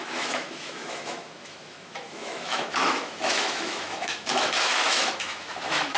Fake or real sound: fake